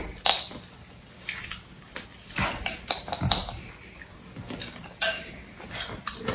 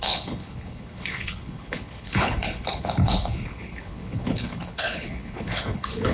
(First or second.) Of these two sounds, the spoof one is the second